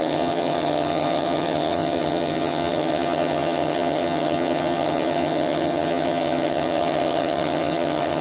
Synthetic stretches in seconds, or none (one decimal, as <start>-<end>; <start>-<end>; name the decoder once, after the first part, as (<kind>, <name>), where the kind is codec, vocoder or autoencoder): 0.0-8.2 (vocoder, HiFi-GAN)